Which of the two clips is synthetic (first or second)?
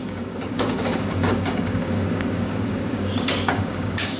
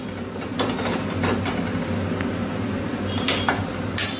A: first